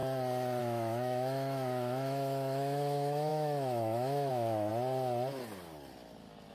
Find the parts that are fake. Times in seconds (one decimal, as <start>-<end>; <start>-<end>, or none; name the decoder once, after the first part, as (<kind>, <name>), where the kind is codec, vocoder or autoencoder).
0.6-4.7 (autoencoder, DAC-VAE)